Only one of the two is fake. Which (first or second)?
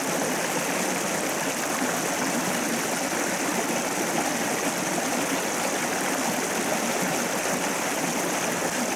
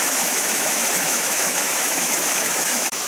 second